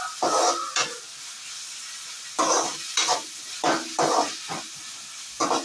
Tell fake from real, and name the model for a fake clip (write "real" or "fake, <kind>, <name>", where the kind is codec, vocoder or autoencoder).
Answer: real